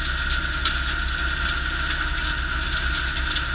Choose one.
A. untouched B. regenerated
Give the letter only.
A